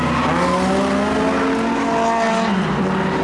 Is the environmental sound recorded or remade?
recorded